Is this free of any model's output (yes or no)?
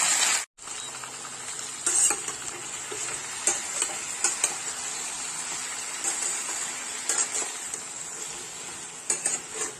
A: yes